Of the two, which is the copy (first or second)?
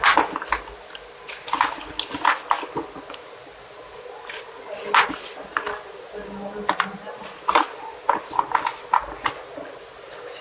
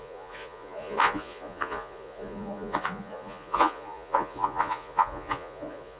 second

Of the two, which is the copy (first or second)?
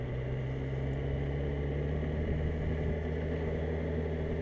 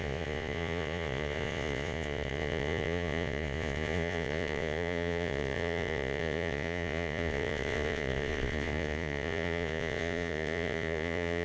second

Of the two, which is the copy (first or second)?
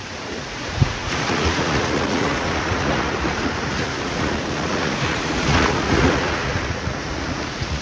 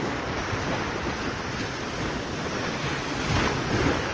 first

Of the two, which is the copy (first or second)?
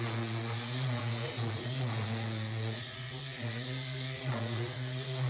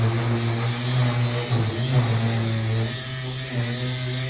first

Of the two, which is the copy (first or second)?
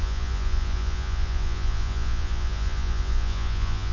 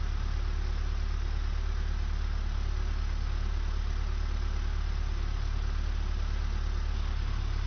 first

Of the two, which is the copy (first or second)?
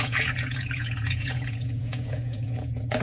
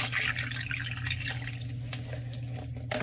first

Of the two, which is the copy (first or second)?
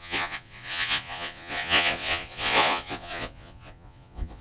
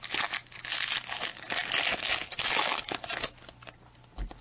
first